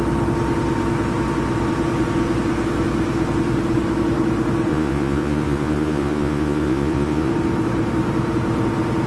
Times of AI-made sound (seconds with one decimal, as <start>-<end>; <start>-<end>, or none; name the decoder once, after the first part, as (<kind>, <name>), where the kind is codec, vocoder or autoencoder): 4.7-7.3 (vocoder, Vocos)